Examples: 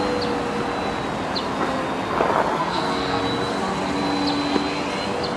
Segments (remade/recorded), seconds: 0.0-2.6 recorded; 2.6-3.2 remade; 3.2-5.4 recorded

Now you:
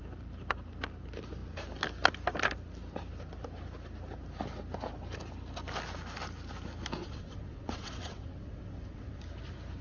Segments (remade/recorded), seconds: 0.0-7.0 recorded; 7.0-9.2 remade; 9.2-9.8 recorded